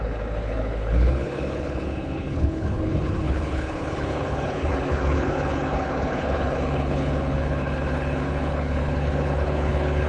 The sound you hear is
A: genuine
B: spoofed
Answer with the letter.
B